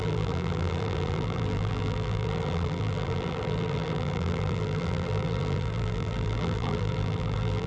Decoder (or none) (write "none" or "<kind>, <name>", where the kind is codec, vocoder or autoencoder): vocoder, BigVGAN v2